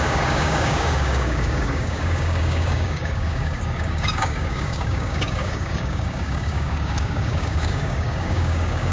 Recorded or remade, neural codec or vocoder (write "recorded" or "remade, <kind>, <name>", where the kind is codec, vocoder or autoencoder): remade, codec, DAC